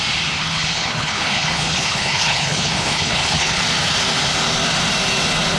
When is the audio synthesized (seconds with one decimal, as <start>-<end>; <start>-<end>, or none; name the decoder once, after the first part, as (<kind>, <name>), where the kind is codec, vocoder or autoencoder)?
0.4-3.6 (codec, HILCodec)